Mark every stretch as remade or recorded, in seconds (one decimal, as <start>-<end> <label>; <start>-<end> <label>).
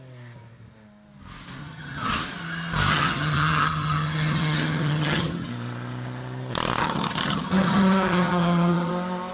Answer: 0.0-1.6 recorded; 1.6-2.1 remade; 2.1-2.9 recorded; 2.9-5.5 remade; 5.5-6.8 recorded; 6.8-8.9 remade; 8.9-9.3 recorded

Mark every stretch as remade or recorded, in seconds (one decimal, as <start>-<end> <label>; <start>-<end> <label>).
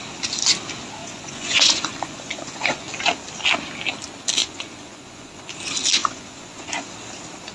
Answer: 0.0-1.0 recorded; 1.0-2.9 remade; 2.9-4.4 recorded; 4.4-5.5 remade; 5.5-6.0 recorded; 6.0-6.9 remade; 6.9-7.5 recorded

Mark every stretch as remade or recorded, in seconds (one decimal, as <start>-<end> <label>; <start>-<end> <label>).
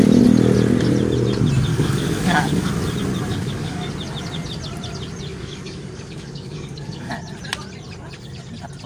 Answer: 0.0-1.7 recorded; 1.7-2.7 remade; 2.7-3.3 recorded; 3.3-3.9 remade; 3.9-5.3 recorded; 5.3-7.1 remade; 7.1-8.9 recorded